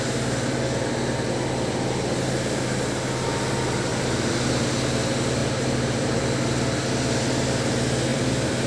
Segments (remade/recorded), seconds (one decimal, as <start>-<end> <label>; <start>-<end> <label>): 0.0-3.9 recorded; 3.9-4.5 remade; 4.5-5.4 recorded; 5.4-6.2 remade; 6.2-8.1 recorded; 8.1-8.7 remade